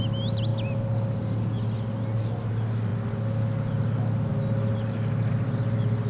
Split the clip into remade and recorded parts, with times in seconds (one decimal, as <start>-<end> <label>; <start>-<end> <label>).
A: 0.0-6.1 recorded